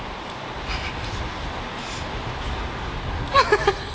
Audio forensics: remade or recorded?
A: recorded